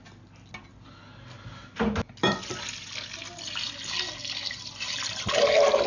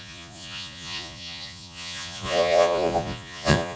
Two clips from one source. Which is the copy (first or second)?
second